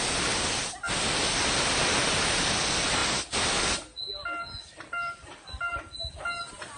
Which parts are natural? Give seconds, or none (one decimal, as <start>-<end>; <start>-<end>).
0.0-6.8